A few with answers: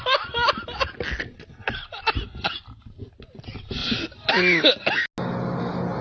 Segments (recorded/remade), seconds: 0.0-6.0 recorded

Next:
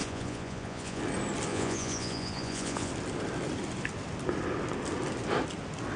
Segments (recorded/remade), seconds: 0.0-1.0 remade; 1.0-1.5 recorded; 1.5-2.9 remade; 2.9-6.0 recorded

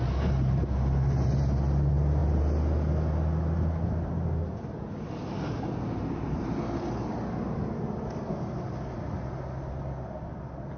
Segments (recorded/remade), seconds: 0.0-10.8 recorded

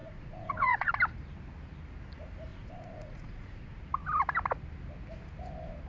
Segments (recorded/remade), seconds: 0.0-0.9 remade; 0.9-2.5 recorded; 2.5-3.8 remade; 3.8-5.9 recorded

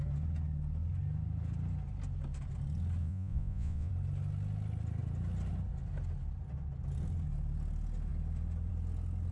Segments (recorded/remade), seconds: 0.0-3.0 recorded; 3.0-3.9 remade; 3.9-9.3 recorded

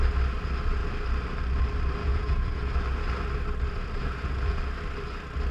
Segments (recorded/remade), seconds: 0.0-2.0 recorded; 2.0-2.7 remade; 2.7-4.0 recorded; 4.0-4.6 remade; 4.6-5.5 recorded

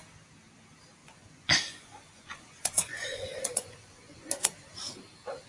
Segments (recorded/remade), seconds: 0.0-1.0 recorded; 1.0-4.3 remade; 4.3-5.5 recorded

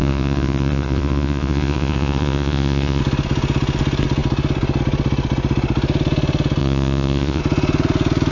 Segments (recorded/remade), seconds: 0.0-3.0 remade; 3.0-6.6 recorded; 6.6-7.4 remade; 7.4-8.3 recorded